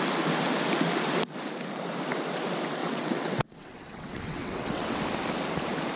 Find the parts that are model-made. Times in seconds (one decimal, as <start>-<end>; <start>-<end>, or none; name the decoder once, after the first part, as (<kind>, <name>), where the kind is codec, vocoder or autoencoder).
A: 2.8-5.0 (vocoder, WaveNeXt)